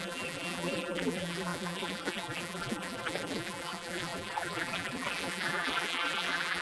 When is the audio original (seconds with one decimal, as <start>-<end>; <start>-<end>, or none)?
none